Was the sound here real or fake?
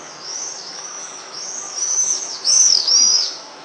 fake